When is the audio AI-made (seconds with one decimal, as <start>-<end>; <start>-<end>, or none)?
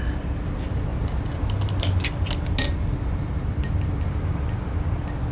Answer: none